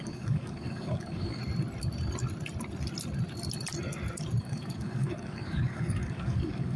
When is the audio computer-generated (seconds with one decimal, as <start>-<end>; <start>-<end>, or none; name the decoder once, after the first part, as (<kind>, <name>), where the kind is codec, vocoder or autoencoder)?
0.0-1.4 (codec, DAC); 4.4-6.8